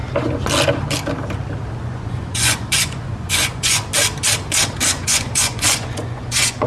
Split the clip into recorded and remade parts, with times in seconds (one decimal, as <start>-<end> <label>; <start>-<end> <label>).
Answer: 0.0-1.8 recorded; 1.8-3.8 remade; 3.8-4.9 recorded; 4.9-6.7 remade